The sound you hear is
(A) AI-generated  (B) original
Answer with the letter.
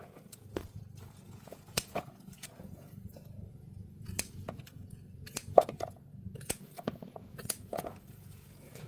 A